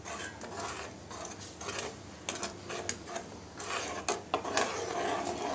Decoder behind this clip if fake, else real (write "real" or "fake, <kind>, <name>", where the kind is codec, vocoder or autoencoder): real